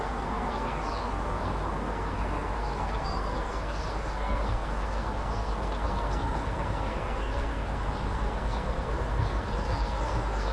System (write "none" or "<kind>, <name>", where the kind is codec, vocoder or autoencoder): codec, SNAC